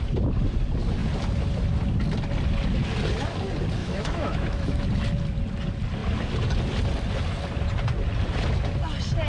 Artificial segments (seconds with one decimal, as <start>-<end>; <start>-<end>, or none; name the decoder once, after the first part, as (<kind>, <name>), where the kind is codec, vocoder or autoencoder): 3.8-4.8 (autoencoder, DAC-VAE)